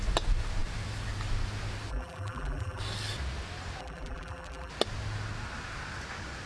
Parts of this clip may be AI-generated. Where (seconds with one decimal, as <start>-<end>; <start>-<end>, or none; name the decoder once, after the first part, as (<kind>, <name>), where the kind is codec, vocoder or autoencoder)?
1.9-2.8 (vocoder, BigVGAN v2); 3.8-4.7